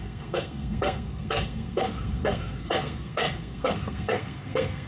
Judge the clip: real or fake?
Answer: fake